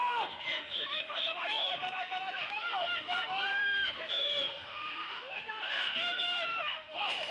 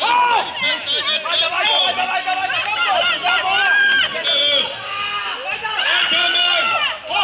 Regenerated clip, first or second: first